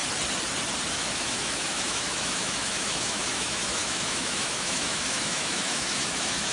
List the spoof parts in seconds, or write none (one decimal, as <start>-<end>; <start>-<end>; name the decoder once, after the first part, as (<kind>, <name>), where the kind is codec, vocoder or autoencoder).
0.9-6.5 (autoencoder, DAC-VAE)